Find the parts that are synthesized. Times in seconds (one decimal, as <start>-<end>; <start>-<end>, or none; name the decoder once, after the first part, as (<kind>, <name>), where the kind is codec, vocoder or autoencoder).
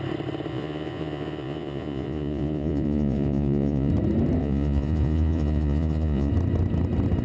0.5-3.9 (vocoder, Vocos); 4.4-6.3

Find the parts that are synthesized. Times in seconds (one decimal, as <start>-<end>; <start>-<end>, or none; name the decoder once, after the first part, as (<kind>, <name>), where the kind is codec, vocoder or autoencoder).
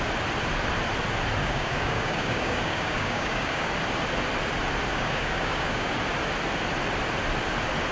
1.4-3.7 (codec, DAC); 4.9-6.0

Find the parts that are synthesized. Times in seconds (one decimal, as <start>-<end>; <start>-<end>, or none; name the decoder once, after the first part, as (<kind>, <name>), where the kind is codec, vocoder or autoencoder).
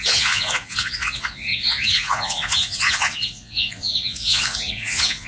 0.0-5.3 (vocoder, Vocos)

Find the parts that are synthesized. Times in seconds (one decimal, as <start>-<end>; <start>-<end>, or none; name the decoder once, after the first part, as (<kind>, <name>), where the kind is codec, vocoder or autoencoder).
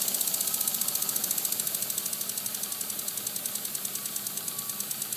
none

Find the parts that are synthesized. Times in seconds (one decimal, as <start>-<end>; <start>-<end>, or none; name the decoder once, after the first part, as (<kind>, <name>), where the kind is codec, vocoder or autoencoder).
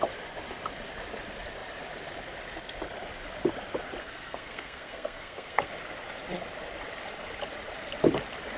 4.0-5.7 (codec, SNAC)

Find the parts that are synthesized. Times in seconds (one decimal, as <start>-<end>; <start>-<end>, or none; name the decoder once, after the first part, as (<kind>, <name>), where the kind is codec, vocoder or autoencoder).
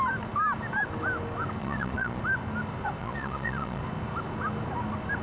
1.6-2.2 (vocoder, Vocos); 3.0-3.8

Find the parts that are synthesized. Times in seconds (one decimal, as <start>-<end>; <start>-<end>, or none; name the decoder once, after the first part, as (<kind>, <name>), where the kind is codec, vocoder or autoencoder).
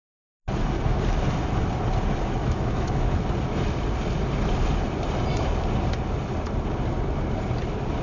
2.4-3.1 (autoencoder, DAC-VAE)